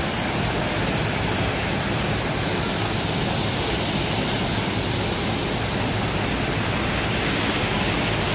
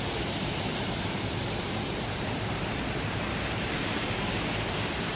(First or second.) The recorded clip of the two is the first